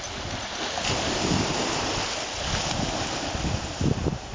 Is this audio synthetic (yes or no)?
no